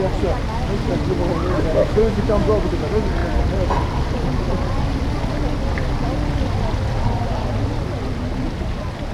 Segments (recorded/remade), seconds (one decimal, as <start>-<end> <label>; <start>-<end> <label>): 0.0-1.7 recorded; 1.7-2.4 remade; 2.4-9.1 recorded

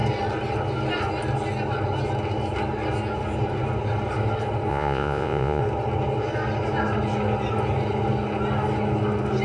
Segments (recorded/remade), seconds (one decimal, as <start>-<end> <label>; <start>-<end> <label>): 0.0-4.7 recorded; 4.7-5.6 remade; 5.6-9.4 recorded

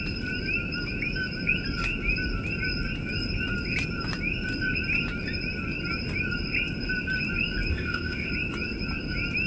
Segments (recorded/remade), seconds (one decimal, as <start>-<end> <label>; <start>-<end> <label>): 0.0-7.7 recorded; 7.7-8.3 remade; 8.3-9.5 recorded